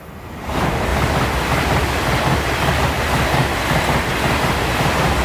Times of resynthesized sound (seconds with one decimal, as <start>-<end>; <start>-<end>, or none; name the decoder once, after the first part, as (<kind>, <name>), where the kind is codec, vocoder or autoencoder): 3.4-4.1 (vocoder, BigVGAN v2)